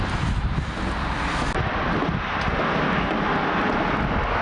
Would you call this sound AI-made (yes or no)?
no